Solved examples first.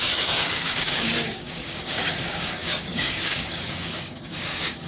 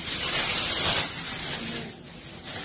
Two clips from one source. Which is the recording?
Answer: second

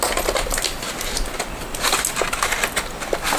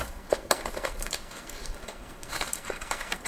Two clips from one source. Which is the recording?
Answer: first